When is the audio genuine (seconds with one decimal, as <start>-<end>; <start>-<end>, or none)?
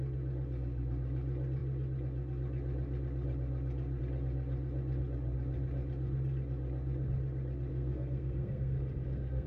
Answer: 0.0-7.7